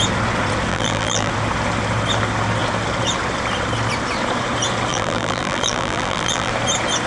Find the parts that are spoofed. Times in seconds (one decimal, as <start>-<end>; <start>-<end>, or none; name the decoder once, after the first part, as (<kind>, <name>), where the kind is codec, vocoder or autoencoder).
0.7-1.3 (vocoder, BigVGAN v2); 4.9-6.5